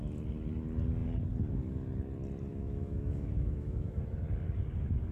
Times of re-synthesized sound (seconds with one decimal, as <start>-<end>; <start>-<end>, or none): 2.5-4.0